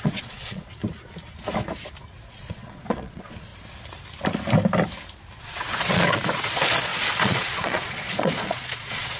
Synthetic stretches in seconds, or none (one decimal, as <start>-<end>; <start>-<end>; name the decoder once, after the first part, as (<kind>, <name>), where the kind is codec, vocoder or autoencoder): 0.0-0.8 (vocoder, Vocos); 2.3-3.5; 5.4-9.2